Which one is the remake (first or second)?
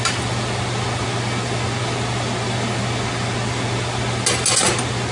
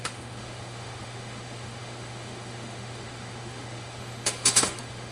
second